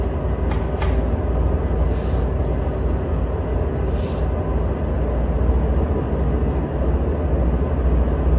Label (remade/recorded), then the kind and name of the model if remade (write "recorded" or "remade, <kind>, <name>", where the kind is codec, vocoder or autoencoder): recorded